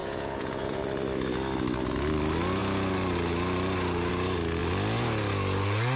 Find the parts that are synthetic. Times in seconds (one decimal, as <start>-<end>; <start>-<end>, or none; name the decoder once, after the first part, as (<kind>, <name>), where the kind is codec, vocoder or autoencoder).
0.0-0.8 (vocoder, Vocos)